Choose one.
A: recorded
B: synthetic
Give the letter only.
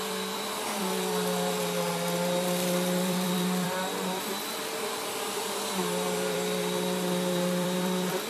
B